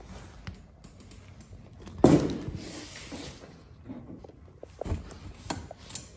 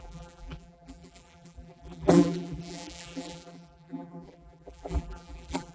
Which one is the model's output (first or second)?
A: second